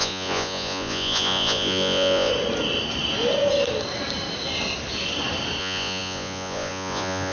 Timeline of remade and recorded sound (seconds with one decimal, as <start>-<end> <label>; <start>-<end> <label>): 0.0-2.3 remade; 2.3-5.6 recorded; 5.6-7.3 remade